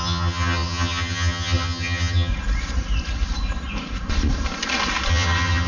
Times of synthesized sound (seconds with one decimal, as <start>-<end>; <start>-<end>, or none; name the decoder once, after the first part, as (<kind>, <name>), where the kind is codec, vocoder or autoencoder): 0.0-2.3 (vocoder, HiFi-GAN); 5.1-5.7